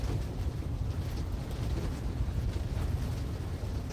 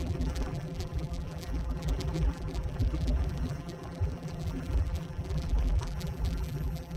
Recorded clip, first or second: first